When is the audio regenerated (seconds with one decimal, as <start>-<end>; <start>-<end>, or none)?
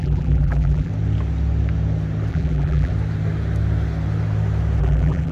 0.0-0.9; 2.3-2.9; 4.8-5.3